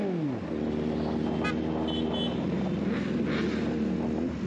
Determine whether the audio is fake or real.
real